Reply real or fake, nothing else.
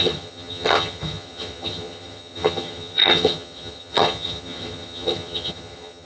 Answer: fake